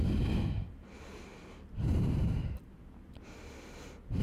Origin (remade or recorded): recorded